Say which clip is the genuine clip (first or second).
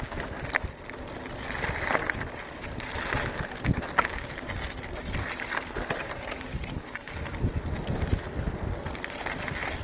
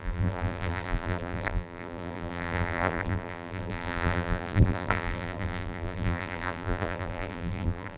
first